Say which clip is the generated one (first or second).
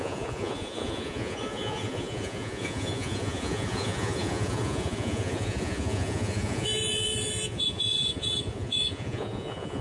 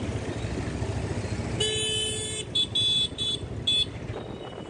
first